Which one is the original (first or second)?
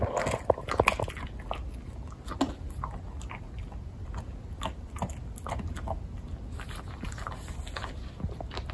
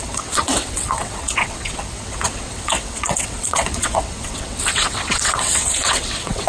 first